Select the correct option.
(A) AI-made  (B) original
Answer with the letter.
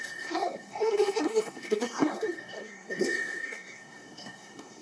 A